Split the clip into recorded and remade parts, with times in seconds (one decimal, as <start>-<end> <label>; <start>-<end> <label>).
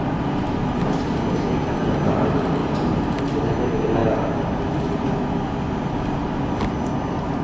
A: 0.0-7.4 recorded